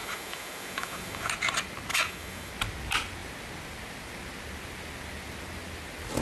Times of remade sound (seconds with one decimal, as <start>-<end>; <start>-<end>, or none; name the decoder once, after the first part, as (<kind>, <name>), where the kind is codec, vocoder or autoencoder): 0.0-1.3 (autoencoder, DAC-VAE); 1.9-2.5